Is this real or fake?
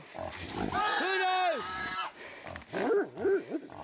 real